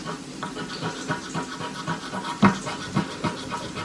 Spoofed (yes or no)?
no